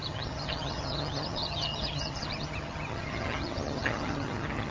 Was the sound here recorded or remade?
remade